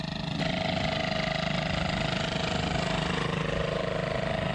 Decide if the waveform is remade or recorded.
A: recorded